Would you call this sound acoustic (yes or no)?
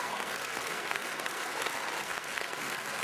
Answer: no